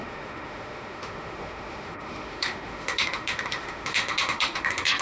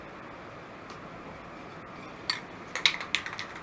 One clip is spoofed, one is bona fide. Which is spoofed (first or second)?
first